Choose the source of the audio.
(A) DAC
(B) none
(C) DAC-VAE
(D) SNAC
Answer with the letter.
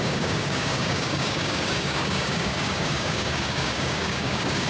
A